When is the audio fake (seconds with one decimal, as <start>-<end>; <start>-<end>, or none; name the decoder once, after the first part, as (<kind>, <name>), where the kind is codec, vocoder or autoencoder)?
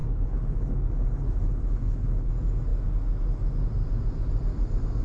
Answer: 0.0-2.3 (codec, HILCodec)